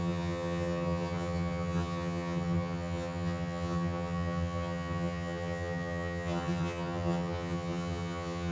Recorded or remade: remade